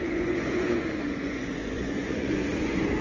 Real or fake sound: fake